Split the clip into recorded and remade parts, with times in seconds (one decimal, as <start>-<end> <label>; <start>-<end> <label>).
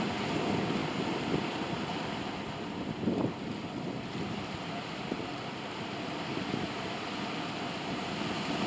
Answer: 0.0-0.8 recorded; 0.8-2.1 remade; 2.1-5.3 recorded; 5.3-8.0 remade; 8.0-8.7 recorded